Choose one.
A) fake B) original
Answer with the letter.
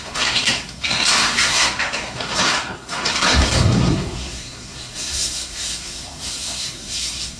A